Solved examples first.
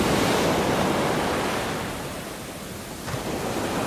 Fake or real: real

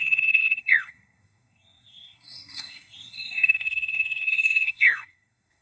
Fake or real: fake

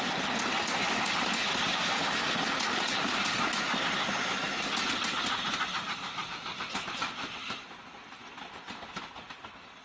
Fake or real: real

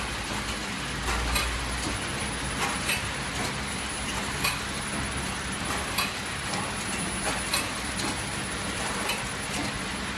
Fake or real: real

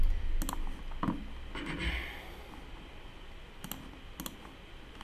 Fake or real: real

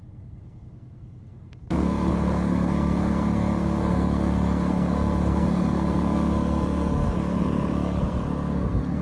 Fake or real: fake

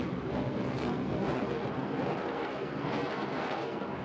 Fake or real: fake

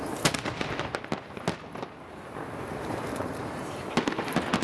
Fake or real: real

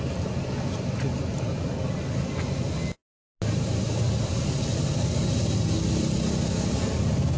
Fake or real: real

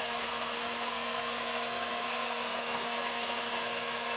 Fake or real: fake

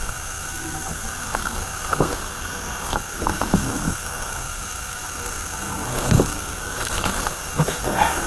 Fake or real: fake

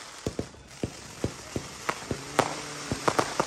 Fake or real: real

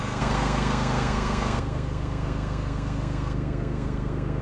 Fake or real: fake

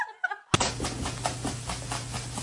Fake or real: real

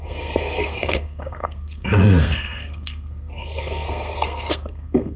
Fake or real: fake